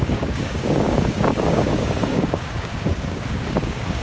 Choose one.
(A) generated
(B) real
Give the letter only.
A